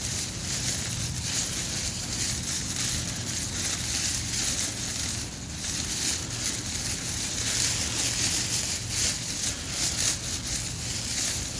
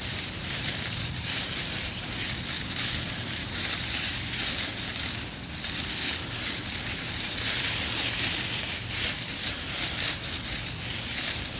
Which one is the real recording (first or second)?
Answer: first